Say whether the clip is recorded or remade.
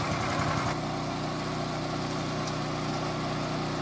recorded